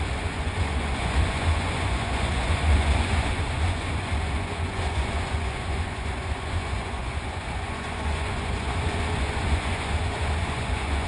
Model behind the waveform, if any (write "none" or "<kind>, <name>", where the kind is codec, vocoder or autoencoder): vocoder, Vocos